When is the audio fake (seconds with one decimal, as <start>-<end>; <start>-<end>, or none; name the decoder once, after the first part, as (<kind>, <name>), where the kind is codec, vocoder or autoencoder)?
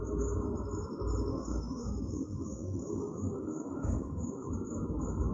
1.3-4.5 (autoencoder, DAC-VAE)